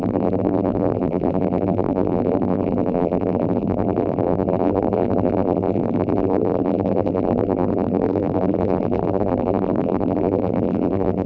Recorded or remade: remade